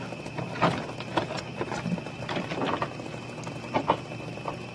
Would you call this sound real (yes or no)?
yes